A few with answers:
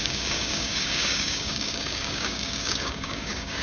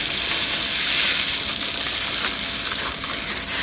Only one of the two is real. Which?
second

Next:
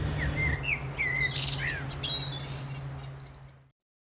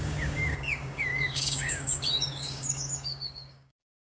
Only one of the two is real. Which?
first